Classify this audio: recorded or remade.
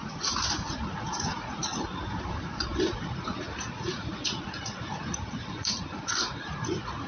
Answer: remade